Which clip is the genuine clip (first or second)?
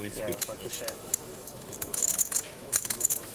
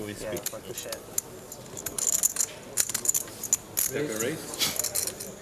second